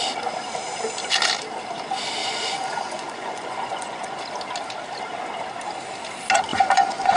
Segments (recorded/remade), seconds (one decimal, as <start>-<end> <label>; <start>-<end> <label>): 0.0-2.2 recorded; 2.2-4.2 remade; 4.2-6.5 recorded; 6.5-7.2 remade